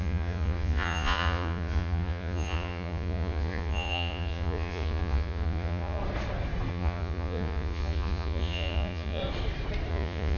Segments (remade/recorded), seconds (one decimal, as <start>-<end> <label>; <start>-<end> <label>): 0.0-6.0 remade; 6.0-6.7 recorded; 6.7-9.2 remade; 9.2-9.9 recorded; 9.9-10.4 remade